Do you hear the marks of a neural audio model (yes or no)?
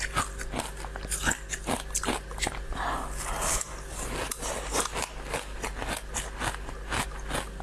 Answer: no